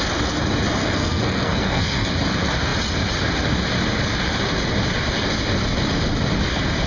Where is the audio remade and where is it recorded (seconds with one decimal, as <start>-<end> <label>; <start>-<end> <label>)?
0.0-0.8 recorded; 0.8-2.1 remade; 2.1-6.9 recorded